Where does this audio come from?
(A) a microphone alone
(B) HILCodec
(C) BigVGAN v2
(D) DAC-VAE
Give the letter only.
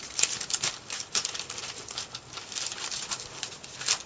C